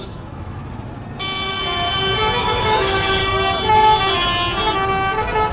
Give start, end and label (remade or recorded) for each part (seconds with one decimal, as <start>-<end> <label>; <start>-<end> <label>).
0.0-0.6 remade; 0.6-2.4 recorded; 2.4-3.2 remade; 3.2-5.5 recorded